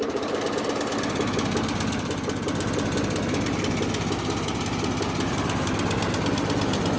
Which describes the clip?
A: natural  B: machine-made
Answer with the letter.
A